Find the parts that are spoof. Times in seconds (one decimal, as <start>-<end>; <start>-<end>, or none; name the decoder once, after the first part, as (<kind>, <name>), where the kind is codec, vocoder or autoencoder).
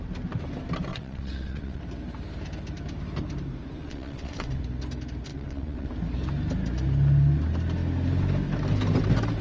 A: 0.9-1.8 (vocoder, WaveNeXt); 3.8-4.6; 5.3-5.9